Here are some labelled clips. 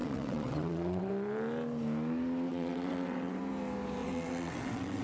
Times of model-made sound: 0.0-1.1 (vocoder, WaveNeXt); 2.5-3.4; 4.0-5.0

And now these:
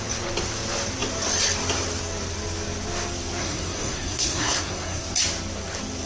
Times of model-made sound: 3.4-5.0 (codec, SNAC)